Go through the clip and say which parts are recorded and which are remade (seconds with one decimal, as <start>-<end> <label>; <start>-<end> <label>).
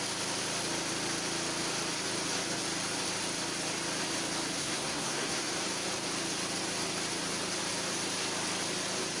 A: 0.0-4.6 recorded; 4.6-5.5 remade; 5.5-9.2 recorded